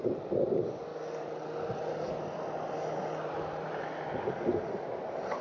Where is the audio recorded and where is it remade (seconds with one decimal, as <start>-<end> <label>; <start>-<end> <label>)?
0.0-5.4 recorded